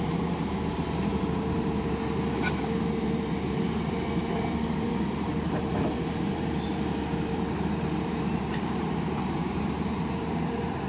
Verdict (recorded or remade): remade